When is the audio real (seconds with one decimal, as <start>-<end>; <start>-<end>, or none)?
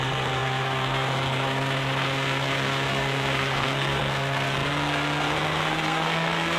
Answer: none